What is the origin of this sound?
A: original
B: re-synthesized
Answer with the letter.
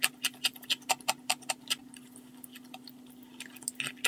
A